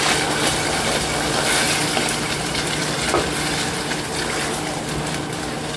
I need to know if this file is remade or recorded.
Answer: recorded